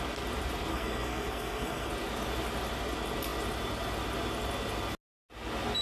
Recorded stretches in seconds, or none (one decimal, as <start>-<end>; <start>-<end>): 0.0-0.7; 1.9-5.8